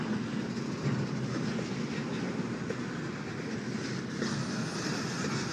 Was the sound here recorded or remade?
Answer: recorded